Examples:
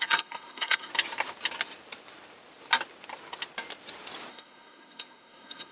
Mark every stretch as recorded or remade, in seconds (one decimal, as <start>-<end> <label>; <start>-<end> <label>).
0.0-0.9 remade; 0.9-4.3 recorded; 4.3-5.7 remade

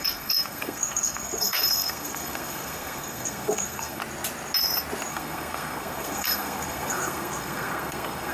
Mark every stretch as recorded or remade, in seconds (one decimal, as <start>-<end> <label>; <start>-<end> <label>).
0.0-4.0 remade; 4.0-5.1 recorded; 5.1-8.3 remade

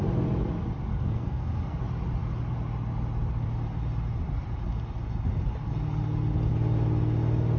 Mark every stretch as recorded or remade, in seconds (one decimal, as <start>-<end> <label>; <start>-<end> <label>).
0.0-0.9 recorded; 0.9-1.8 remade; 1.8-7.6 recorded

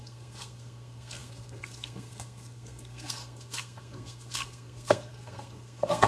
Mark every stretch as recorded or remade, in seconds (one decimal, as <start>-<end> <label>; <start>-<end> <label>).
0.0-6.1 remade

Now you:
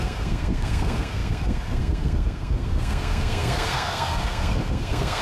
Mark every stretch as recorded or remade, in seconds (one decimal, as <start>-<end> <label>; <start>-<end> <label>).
0.0-5.2 remade

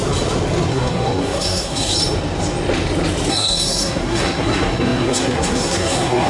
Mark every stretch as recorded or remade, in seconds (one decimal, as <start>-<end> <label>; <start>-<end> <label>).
0.0-0.7 recorded; 0.7-1.9 remade; 1.9-3.3 recorded; 3.3-6.3 remade

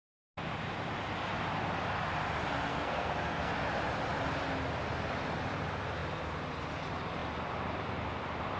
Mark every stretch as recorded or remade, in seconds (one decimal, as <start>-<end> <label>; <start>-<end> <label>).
0.0-2.7 recorded; 2.7-3.5 remade; 3.5-8.6 recorded